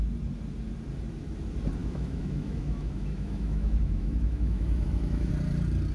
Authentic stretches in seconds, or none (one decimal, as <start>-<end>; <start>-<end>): 0.0-1.8; 5.3-5.9